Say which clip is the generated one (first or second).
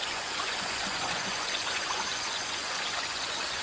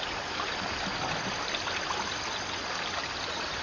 first